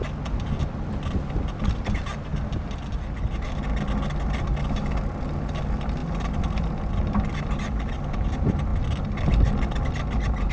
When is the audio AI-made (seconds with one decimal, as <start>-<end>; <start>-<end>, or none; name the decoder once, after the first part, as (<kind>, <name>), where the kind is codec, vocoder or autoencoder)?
none